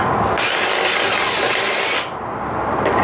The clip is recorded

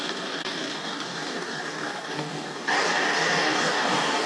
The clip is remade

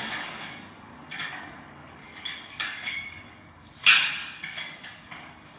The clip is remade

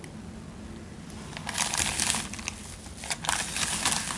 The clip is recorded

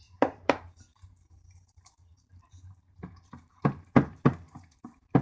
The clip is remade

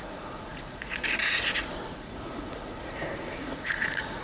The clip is remade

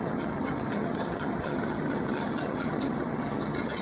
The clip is remade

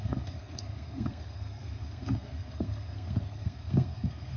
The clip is remade